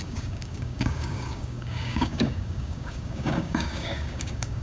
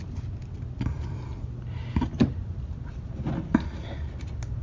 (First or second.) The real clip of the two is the second